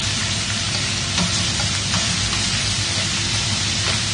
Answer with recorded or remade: recorded